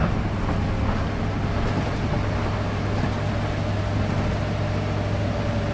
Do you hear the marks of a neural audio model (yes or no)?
no